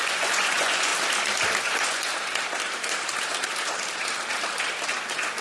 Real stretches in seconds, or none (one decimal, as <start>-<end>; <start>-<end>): 0.9-1.6; 2.1-5.4